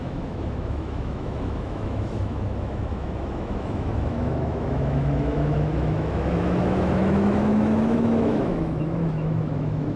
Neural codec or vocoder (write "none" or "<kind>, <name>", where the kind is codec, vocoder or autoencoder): autoencoder, DAC-VAE